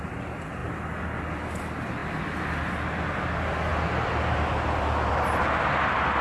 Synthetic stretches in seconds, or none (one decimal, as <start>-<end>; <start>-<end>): none